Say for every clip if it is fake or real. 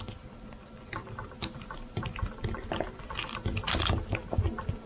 real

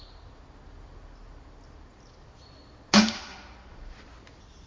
real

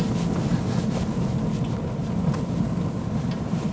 real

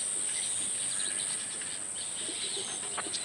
real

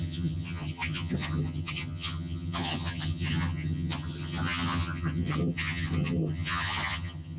fake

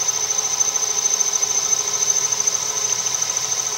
real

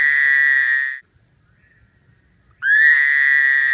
fake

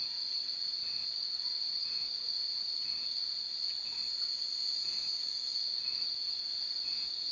fake